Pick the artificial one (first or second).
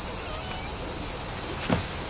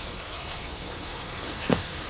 second